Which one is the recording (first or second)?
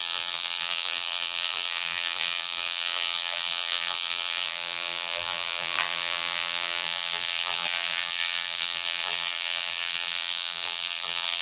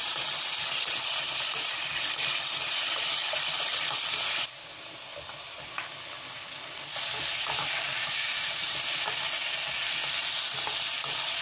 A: second